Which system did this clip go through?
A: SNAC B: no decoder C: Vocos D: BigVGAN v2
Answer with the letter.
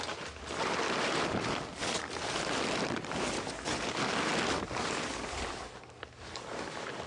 B